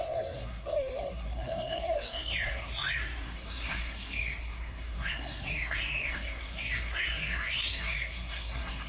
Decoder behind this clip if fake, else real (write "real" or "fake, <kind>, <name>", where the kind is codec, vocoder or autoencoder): fake, codec, SNAC